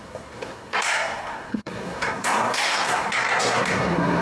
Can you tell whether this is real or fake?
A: fake